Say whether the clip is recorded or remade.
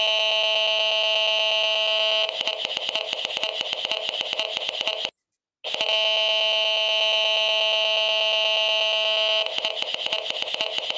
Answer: recorded